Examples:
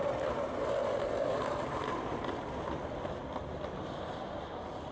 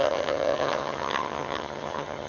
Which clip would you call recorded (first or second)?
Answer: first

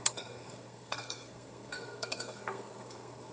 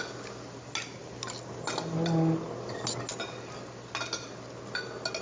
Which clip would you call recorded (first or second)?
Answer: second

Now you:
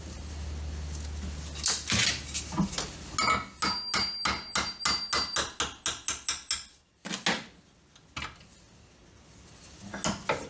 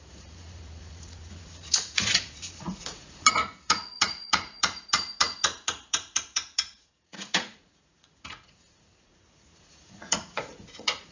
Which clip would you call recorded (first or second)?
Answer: first